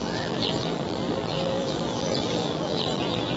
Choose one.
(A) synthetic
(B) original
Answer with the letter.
A